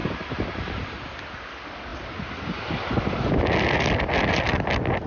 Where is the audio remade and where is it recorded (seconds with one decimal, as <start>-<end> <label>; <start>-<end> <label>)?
0.0-5.1 recorded